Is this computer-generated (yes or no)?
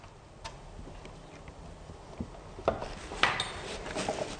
no